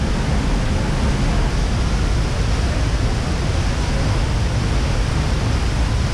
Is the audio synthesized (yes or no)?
no